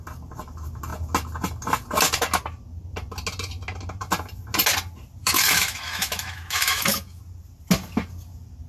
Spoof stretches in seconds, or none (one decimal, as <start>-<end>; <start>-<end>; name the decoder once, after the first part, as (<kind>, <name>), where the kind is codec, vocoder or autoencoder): 5.2-7.2 (autoencoder, DAC-VAE)